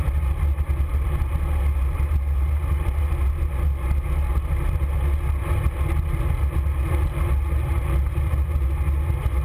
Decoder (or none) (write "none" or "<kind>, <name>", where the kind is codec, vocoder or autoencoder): none